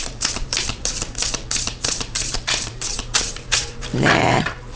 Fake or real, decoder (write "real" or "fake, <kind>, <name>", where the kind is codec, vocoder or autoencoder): fake, vocoder, BigVGAN v2